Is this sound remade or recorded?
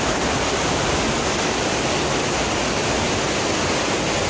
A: recorded